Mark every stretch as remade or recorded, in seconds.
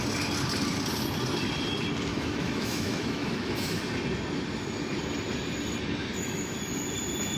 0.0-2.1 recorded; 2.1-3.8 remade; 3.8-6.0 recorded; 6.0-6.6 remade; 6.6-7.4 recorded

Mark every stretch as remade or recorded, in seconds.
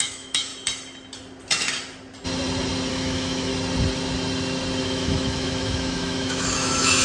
0.0-0.5 remade; 0.5-2.9 recorded; 2.9-3.5 remade; 3.5-4.8 recorded; 4.8-7.0 remade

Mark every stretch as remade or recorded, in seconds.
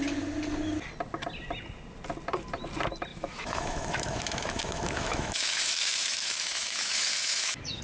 0.0-3.1 recorded; 3.1-7.8 remade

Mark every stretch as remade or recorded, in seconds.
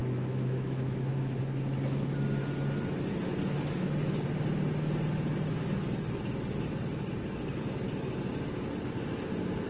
0.0-1.4 remade; 1.4-9.7 recorded